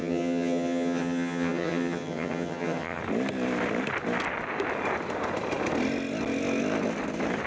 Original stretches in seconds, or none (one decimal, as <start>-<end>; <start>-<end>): 3.0-7.5